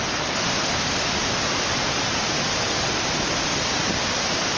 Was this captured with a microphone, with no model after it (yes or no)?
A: yes